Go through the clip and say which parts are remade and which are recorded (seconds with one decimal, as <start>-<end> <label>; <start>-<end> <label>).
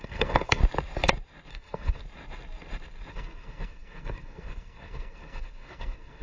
0.0-0.6 remade; 0.6-1.5 recorded; 1.5-2.0 remade; 2.0-3.1 recorded; 3.1-6.2 remade